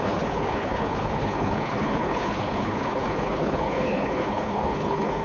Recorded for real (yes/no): no